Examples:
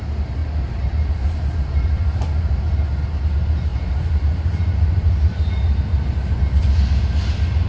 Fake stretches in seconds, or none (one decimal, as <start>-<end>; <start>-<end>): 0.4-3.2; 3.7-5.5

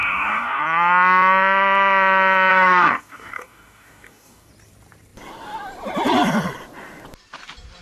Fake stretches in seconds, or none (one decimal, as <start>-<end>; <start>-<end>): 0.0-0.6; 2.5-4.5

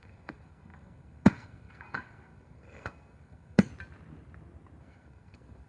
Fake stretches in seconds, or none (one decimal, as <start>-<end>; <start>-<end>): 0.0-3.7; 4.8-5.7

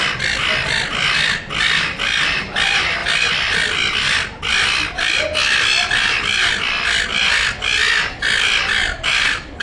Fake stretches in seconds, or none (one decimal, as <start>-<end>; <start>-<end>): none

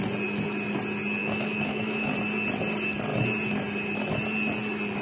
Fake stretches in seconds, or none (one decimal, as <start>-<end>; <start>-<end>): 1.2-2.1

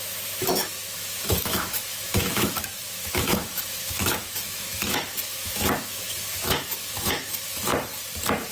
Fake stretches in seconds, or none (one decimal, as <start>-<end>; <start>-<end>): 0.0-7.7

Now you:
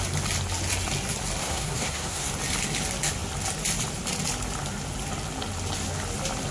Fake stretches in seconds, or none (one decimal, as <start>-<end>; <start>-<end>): 1.4-2.3